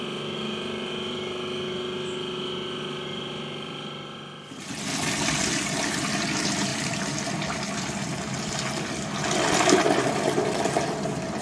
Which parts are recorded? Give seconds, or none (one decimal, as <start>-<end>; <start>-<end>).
0.0-6.7; 7.3-11.4